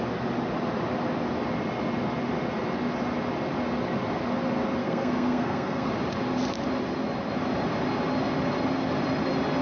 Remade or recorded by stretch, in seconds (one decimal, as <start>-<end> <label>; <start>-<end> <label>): 0.0-4.8 recorded; 4.8-5.9 remade; 5.9-9.6 recorded